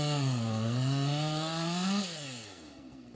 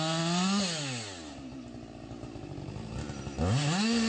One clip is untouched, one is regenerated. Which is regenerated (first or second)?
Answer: first